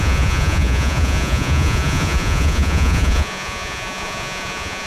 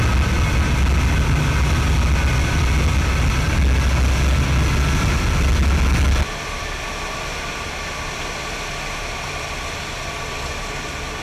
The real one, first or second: second